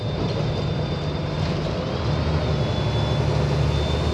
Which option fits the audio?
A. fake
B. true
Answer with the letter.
B